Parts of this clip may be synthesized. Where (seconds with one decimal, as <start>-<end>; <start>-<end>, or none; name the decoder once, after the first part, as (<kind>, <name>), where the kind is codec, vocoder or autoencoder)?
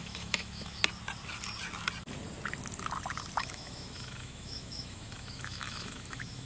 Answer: 0.0-0.8 (autoencoder, DAC-VAE); 3.4-6.5